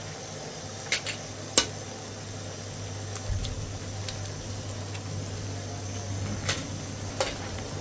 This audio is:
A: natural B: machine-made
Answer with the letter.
A